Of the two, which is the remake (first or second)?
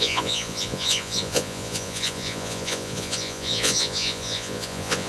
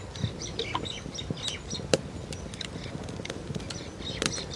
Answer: first